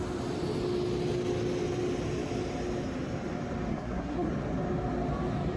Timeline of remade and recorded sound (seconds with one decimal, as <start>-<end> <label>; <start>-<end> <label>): 0.0-3.7 recorded; 3.7-4.3 remade; 4.3-5.6 recorded